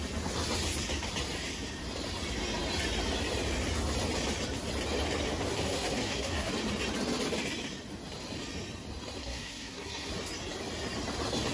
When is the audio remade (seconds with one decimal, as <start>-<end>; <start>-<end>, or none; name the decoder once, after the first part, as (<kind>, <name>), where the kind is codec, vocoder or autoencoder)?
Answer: 5.5-6.5 (codec, SNAC); 9.2-10.1